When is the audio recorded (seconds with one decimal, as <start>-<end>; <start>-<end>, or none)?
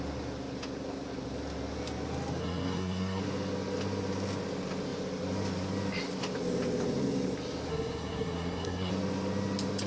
0.0-2.4; 3.2-7.7; 8.9-9.9